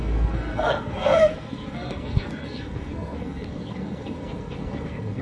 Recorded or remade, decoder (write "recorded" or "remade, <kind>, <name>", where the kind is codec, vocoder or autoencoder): remade, codec, SNAC